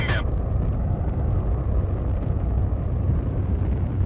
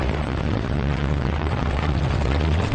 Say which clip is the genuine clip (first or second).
first